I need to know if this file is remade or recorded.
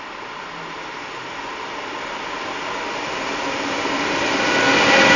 recorded